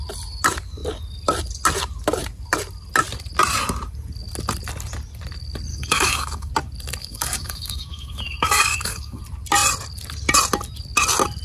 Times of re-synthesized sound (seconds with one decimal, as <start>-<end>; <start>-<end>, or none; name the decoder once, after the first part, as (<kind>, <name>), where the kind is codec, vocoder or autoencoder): 5.7-6.5 (codec, DAC); 7.0-9.2